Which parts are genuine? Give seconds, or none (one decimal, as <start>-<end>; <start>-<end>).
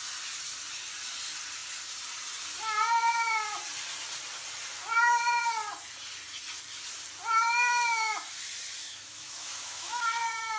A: 0.0-8.8; 10.0-10.6